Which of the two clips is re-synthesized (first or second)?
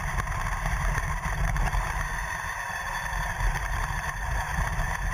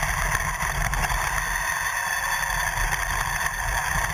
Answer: first